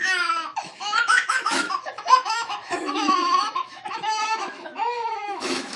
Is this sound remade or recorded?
remade